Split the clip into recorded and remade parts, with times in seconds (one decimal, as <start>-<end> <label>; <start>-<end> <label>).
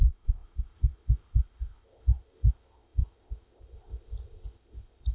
0.0-5.1 remade